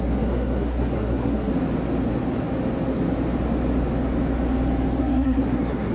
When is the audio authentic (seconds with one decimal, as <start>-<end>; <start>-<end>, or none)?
1.5-5.0